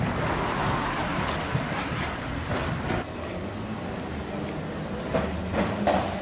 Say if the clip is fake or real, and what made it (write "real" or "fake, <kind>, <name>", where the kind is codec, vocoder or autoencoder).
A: real